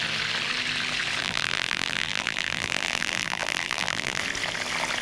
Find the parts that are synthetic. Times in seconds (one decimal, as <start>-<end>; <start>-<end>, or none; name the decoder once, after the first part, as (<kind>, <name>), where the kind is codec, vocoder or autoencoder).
1.2-4.2 (vocoder, BigVGAN v2)